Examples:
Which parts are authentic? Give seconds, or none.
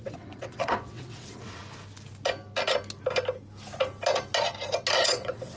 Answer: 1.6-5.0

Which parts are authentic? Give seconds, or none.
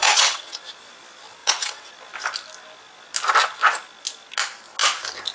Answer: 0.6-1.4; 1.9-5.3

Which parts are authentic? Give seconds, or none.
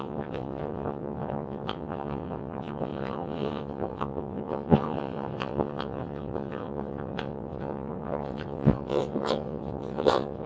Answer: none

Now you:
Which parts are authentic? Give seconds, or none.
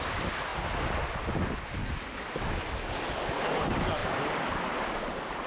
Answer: 0.0-5.5